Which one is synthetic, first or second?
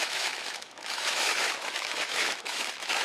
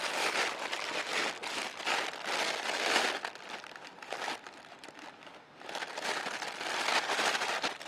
first